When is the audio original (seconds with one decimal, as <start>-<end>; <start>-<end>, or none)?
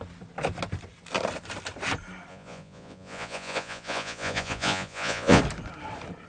0.0-2.3; 5.4-6.3